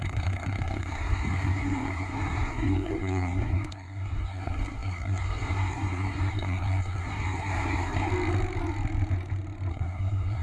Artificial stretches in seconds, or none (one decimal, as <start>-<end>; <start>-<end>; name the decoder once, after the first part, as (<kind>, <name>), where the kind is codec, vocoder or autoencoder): 0.0-8.1 (codec, SNAC); 9.7-10.4